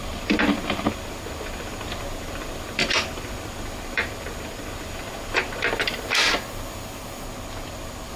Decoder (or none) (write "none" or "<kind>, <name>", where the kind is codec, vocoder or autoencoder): vocoder, BigVGAN v2